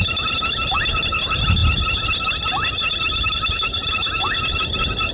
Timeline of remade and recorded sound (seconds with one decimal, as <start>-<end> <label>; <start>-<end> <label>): 0.0-5.1 recorded